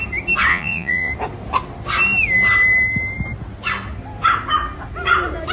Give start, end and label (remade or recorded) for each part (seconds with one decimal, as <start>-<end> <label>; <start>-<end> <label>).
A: 0.0-0.5 recorded; 0.5-1.1 remade; 1.1-5.5 recorded